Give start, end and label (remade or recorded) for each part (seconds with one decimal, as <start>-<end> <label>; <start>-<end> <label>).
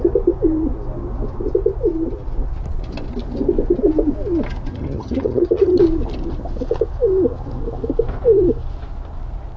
0.0-4.7 recorded; 4.7-5.8 remade; 5.8-9.6 recorded